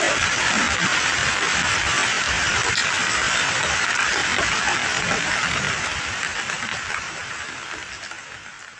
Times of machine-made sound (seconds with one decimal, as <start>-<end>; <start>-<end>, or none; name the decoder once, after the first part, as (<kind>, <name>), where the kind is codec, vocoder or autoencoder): 4.3-7.1 (vocoder, BigVGAN v2)